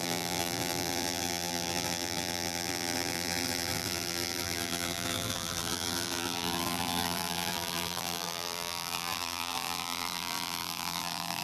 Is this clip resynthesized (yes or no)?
yes